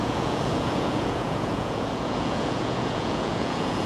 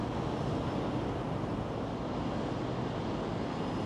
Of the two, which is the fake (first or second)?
first